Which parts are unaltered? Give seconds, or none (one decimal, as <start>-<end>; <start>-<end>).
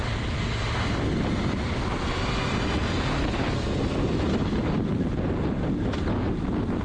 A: 0.0-6.8